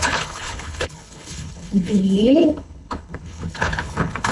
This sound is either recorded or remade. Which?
remade